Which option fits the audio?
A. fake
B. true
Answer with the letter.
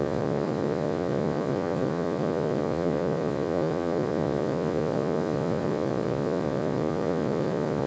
A